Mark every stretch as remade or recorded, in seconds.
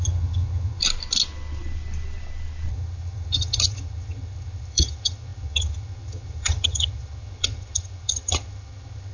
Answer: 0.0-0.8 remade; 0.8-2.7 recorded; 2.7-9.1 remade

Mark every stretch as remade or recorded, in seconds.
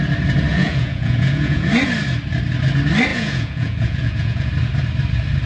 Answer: 0.0-0.5 recorded; 0.5-1.7 remade; 1.7-3.1 recorded; 3.1-4.5 remade; 4.5-5.5 recorded